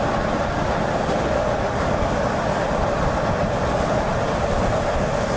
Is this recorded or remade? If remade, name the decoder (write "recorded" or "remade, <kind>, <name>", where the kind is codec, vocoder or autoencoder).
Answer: recorded